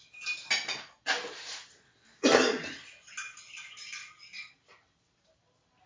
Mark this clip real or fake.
real